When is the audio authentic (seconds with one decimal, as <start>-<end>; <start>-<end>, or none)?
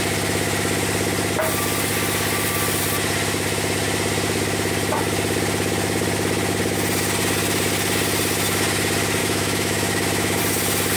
0.0-9.2; 10.4-11.0